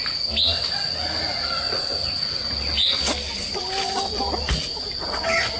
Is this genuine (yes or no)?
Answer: yes